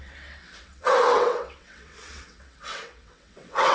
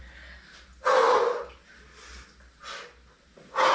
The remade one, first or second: first